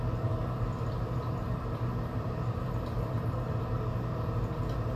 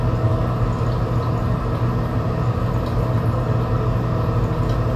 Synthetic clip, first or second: first